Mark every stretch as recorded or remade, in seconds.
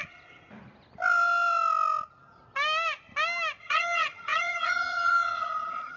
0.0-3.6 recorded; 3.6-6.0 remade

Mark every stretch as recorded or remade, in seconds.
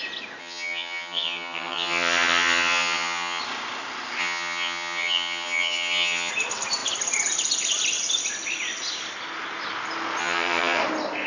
0.0-0.4 recorded; 0.4-3.4 remade; 3.4-4.2 recorded; 4.2-6.3 remade; 6.3-10.2 recorded; 10.2-10.8 remade; 10.8-11.3 recorded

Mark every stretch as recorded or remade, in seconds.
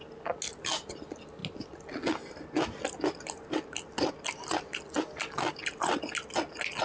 0.0-6.8 recorded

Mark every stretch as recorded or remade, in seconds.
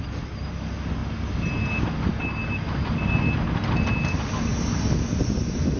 0.0-5.8 recorded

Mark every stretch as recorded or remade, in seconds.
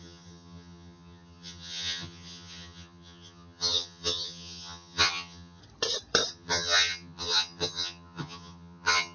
0.0-5.6 remade; 5.6-6.3 recorded; 6.3-9.1 remade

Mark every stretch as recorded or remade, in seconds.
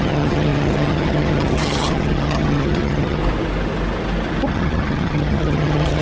0.0-3.2 remade; 3.2-4.5 recorded; 4.5-6.0 remade